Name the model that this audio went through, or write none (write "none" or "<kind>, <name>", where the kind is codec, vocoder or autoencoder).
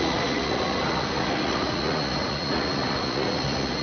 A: vocoder, Vocos